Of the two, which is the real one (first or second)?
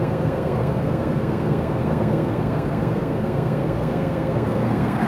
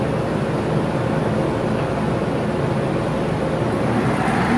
second